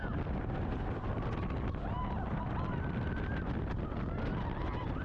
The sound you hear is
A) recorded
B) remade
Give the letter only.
A